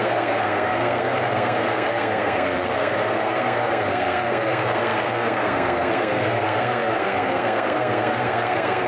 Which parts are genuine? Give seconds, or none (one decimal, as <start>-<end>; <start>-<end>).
none